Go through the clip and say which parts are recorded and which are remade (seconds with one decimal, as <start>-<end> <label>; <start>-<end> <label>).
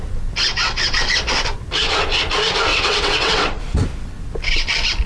0.0-0.5 recorded; 0.5-1.1 remade; 1.1-2.7 recorded; 2.7-3.6 remade; 3.6-5.1 recorded